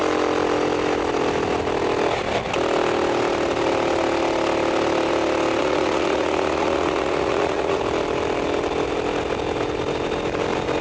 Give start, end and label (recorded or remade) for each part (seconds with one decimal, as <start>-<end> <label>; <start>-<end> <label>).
0.0-5.6 recorded; 5.6-7.8 remade; 7.8-10.8 recorded